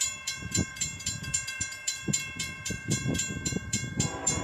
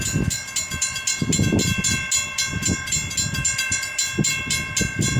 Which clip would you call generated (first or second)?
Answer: first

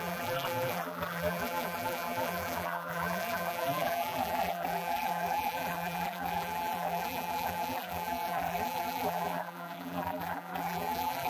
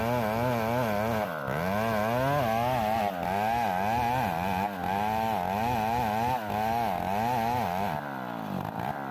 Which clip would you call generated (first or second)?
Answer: first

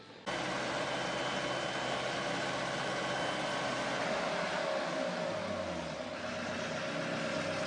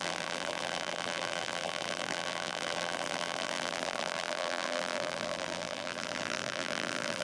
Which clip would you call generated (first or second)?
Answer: second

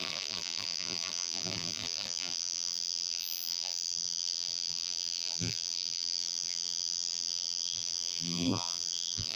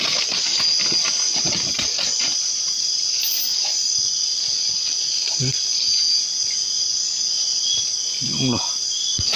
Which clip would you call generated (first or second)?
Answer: first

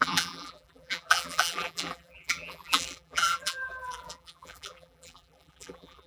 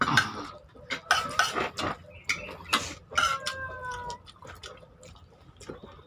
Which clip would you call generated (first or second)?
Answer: first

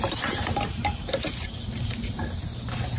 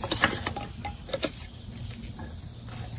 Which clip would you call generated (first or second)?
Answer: first